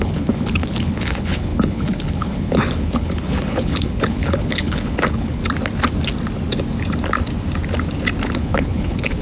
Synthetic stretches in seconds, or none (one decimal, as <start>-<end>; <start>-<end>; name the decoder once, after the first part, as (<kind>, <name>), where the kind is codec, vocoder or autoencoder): 0.0-5.4 (codec, HILCodec); 8.3-9.2